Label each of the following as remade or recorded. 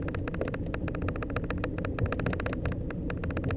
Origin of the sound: recorded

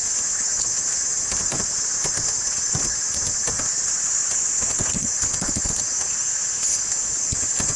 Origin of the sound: recorded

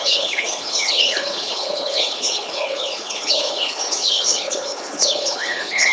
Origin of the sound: remade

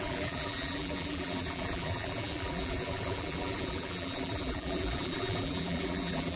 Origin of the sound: remade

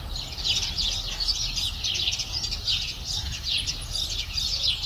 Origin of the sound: recorded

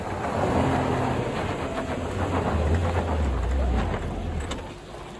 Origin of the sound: recorded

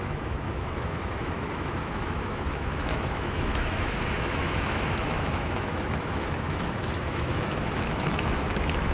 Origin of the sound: remade